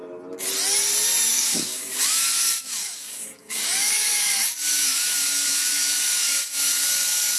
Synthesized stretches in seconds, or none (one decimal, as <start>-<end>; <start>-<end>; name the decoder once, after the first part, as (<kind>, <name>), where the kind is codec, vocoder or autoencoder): 1.3-7.4 (codec, DAC)